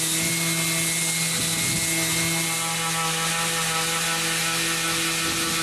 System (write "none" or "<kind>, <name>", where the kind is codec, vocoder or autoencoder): none